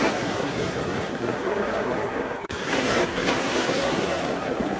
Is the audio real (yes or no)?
no